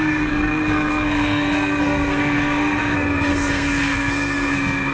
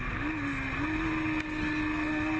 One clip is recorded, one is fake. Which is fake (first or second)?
first